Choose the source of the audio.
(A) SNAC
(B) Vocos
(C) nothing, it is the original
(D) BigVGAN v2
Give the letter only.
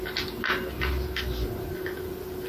C